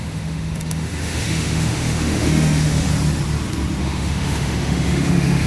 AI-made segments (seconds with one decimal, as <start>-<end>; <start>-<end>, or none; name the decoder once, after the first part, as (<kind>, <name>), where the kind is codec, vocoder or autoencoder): 0.0-2.9 (autoencoder, DAC-VAE); 3.8-5.5